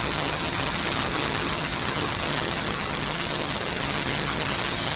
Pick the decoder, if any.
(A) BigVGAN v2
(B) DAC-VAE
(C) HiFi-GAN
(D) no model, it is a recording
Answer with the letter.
C